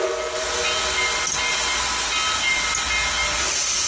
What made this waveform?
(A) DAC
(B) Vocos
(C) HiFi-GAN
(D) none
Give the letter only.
D